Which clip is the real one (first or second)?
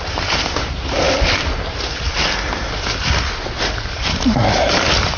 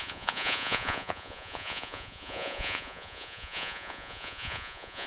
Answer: first